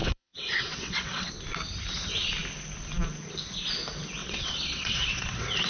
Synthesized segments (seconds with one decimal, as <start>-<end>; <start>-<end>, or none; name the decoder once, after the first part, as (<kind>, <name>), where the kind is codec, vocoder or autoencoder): 0.0-1.3 (vocoder, WaveNeXt); 4.2-5.7